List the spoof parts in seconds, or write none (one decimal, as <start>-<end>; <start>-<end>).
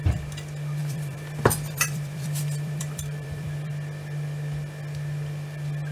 0.8-3.7